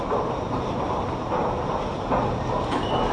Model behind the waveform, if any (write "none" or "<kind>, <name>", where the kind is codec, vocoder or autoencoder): none